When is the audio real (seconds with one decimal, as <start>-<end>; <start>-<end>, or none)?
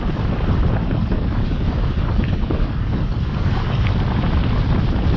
0.0-0.8; 3.9-5.2